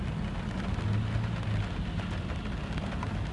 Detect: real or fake real